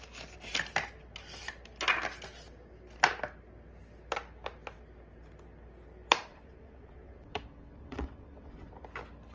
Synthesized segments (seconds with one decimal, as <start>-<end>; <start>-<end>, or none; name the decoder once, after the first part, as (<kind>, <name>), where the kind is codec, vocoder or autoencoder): 6.3-8.7 (vocoder, WaveNeXt)